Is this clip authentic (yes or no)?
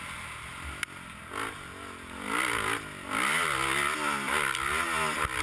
yes